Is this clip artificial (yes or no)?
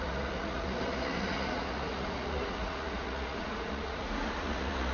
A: yes